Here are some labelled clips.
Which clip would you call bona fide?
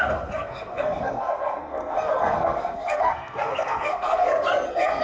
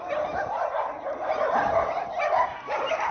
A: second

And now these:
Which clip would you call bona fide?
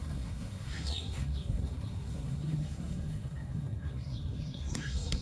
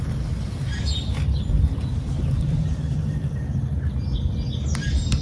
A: second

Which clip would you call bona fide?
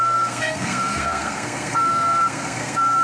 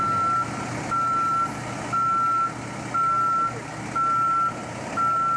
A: second